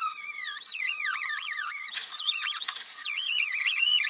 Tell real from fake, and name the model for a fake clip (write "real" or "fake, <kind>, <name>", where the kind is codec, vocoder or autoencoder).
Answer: fake, vocoder, Vocos